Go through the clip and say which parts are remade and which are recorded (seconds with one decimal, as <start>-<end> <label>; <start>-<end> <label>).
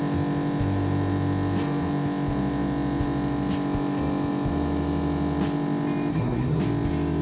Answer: 0.0-6.1 recorded; 6.1-6.6 remade; 6.6-7.2 recorded